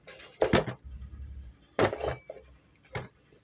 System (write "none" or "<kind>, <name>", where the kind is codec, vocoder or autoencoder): none